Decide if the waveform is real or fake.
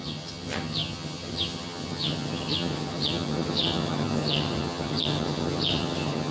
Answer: fake